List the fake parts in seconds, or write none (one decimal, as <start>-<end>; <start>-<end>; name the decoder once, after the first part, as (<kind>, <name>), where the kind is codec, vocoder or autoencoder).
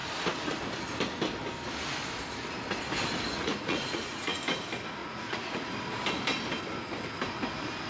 3.3-4.4 (vocoder, Vocos); 5.0-5.7